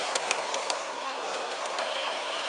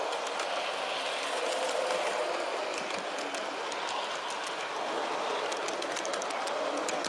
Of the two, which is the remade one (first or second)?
first